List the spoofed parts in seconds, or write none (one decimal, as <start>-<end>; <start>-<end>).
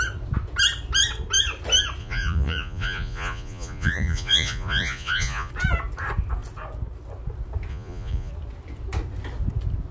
2.0-5.5; 7.7-8.3